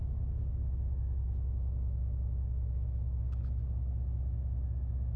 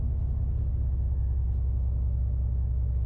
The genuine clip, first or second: second